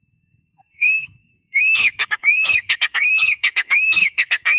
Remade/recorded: remade